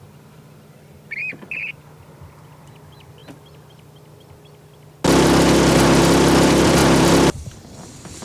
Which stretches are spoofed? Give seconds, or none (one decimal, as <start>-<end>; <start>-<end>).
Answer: 0.0-3.2; 6.0-8.2